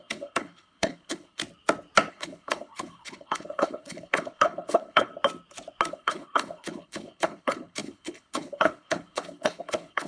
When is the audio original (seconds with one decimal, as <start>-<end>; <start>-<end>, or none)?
1.4-2.1; 5.1-5.9